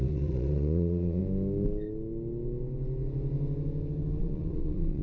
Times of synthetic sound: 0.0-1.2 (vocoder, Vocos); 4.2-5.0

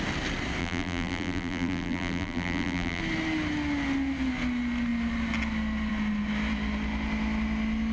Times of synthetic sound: 0.6-3.0 (vocoder, BigVGAN v2)

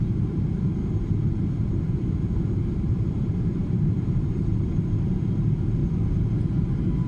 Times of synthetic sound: 0.0-5.8 (vocoder, BigVGAN v2)

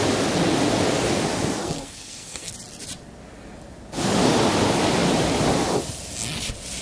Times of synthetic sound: 1.6-2.5 (codec, SNAC)